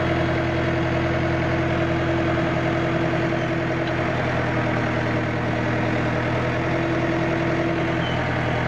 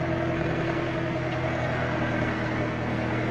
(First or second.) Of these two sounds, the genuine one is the first